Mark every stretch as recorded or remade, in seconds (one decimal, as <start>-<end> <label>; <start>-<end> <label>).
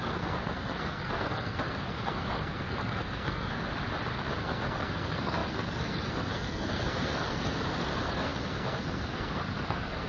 0.0-3.7 remade; 3.7-4.4 recorded; 4.4-10.1 remade